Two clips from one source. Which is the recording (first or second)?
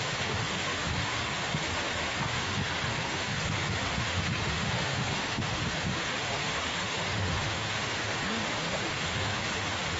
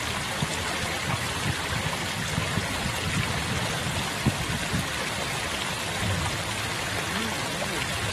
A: second